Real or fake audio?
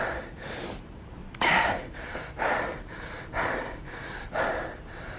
fake